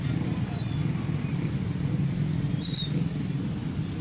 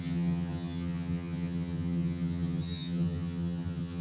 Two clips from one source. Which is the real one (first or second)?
first